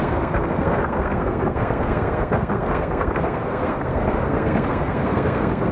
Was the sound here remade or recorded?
remade